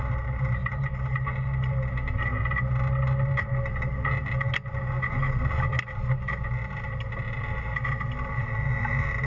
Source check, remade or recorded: recorded